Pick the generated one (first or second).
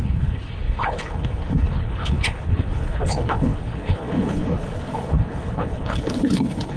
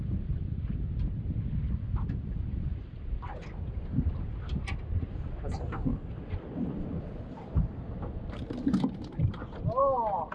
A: first